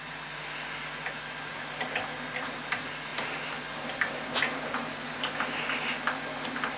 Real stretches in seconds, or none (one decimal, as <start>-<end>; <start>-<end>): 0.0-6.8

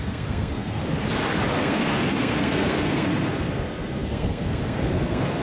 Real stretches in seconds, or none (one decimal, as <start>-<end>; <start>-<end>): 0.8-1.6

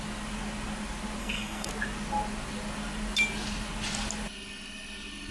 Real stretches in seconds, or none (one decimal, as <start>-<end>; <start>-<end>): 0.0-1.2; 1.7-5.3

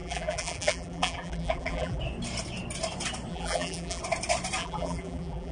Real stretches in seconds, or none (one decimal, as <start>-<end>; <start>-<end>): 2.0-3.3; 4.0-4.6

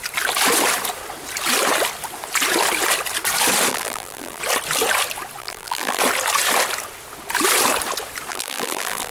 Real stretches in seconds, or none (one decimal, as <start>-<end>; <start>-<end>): 0.0-3.7; 4.4-5.4; 6.0-8.3

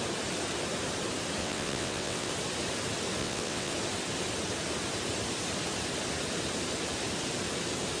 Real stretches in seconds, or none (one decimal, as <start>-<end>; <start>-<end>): 0.0-1.4; 2.3-3.2; 3.7-8.0